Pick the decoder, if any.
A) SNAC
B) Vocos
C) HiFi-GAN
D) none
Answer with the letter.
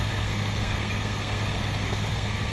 A